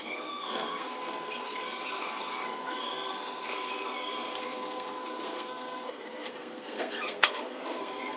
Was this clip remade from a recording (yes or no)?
yes